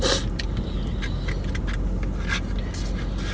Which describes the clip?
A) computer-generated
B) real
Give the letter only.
B